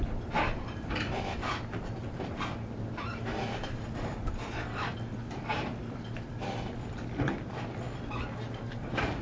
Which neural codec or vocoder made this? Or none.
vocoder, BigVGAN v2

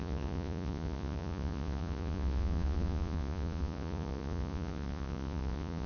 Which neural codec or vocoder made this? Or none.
vocoder, Vocos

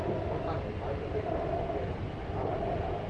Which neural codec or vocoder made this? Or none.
none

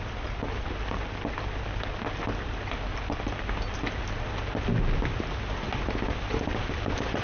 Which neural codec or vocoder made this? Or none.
none